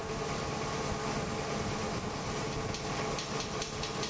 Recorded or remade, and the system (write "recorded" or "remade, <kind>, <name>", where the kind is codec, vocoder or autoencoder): recorded